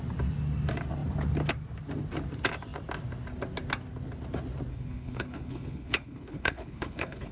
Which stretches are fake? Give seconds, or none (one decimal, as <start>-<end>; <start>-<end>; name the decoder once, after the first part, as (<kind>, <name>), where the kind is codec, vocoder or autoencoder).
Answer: 4.7-7.3 (codec, HILCodec)